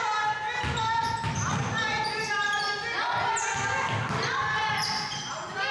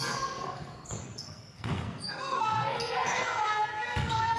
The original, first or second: first